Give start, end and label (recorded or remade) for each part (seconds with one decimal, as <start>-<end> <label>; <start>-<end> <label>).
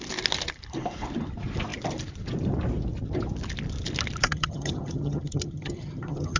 0.0-4.2 recorded; 4.2-6.4 remade